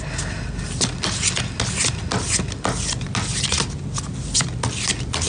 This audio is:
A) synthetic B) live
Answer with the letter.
B